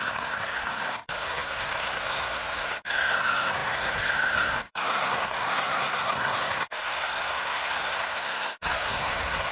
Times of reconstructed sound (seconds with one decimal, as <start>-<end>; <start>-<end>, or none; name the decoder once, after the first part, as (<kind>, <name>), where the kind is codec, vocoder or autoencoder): 0.0-9.5 (codec, SNAC)